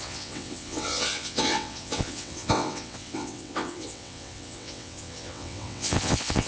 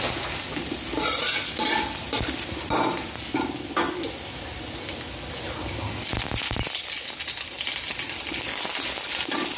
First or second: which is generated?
first